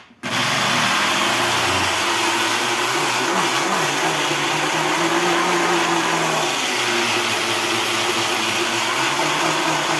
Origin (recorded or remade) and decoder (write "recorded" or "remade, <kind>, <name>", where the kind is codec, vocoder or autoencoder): recorded